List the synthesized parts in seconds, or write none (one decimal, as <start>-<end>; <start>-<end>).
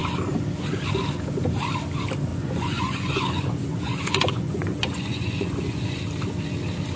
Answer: 2.3-6.0